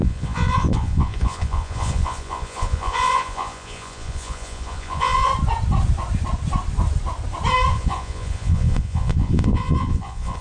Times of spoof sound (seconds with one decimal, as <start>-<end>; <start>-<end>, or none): 0.0-5.3; 7.7-10.4